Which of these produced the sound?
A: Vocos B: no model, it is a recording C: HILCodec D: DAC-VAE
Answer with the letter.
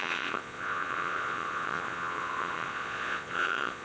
A